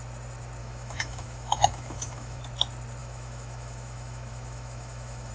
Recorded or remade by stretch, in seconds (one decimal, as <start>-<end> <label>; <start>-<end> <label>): 0.0-0.6 recorded; 0.6-2.4 remade; 2.4-3.0 recorded; 3.0-5.3 remade